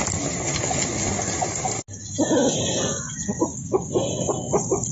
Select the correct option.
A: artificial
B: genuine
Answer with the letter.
B